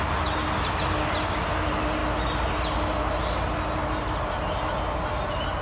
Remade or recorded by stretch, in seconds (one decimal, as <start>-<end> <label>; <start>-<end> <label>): 0.0-5.6 recorded